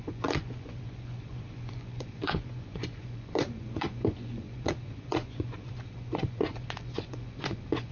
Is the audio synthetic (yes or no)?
yes